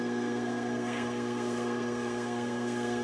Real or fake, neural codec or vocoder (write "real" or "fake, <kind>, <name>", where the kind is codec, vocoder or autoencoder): fake, codec, SNAC